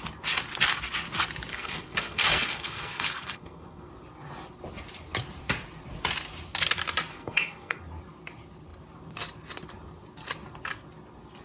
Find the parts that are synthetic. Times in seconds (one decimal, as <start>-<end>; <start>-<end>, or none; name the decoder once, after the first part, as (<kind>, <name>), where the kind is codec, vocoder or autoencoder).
1.5-3.9 (codec, SNAC); 7.1-7.8